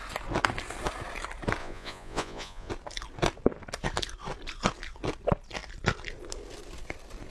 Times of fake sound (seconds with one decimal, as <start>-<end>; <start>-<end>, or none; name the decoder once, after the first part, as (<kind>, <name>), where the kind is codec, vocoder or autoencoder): 1.6-2.7 (vocoder, Vocos)